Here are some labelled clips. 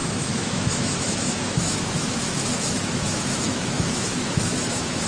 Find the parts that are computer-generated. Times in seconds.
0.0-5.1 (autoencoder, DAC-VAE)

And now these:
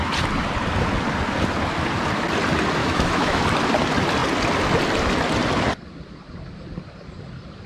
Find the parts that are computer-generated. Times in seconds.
2.8-3.4 (autoencoder, DAC-VAE)

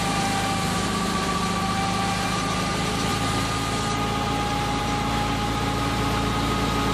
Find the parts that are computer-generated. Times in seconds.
none

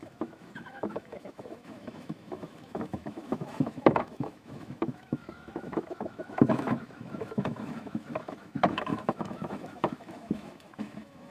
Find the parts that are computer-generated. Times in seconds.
0.0-11.3 (autoencoder, DAC-VAE)

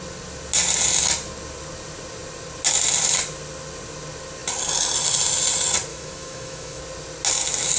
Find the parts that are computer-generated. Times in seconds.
5.9-6.8 (autoencoder, DAC-VAE)